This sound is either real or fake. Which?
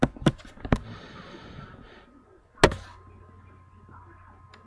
real